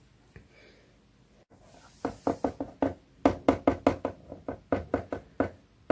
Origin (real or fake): real